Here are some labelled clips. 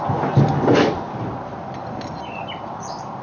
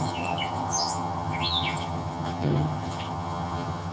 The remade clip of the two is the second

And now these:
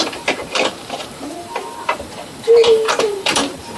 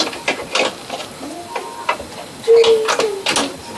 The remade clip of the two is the first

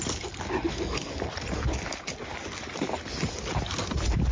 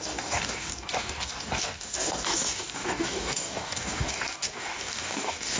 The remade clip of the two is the second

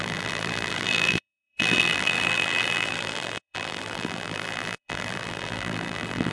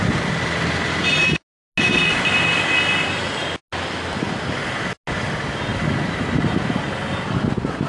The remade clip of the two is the first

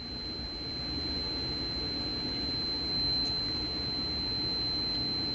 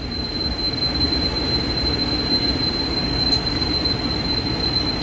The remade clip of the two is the second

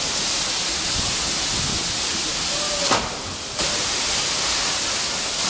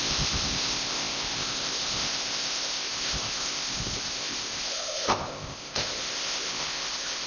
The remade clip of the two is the second